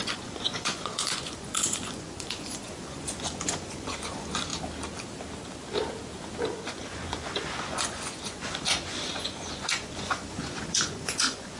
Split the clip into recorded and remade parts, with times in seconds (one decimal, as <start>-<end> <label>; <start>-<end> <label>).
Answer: 0.0-4.5 remade; 4.5-6.4 recorded; 6.4-11.6 remade